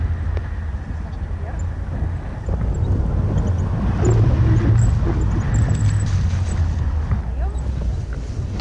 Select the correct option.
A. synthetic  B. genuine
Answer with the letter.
B